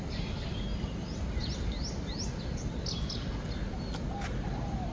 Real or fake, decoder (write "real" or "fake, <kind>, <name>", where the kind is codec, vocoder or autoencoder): real